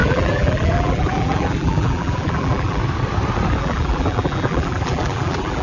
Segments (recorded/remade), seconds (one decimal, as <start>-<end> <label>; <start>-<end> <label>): 0.0-2.8 remade; 2.8-3.6 recorded; 3.6-5.6 remade